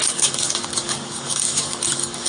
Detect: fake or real fake